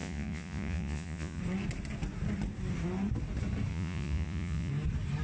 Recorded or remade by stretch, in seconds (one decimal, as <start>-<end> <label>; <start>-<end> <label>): 0.0-1.4 remade; 1.4-3.7 recorded; 3.7-4.7 remade; 4.7-5.2 recorded